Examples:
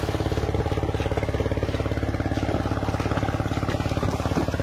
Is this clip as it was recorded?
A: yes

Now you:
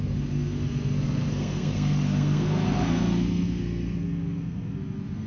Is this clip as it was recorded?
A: no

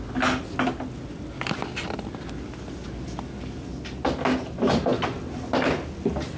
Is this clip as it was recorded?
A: yes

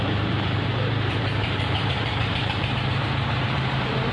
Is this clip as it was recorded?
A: no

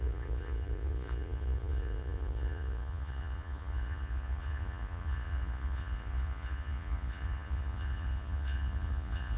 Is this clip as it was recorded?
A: no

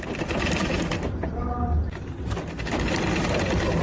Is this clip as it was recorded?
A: yes